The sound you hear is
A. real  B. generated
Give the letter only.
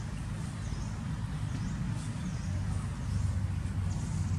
A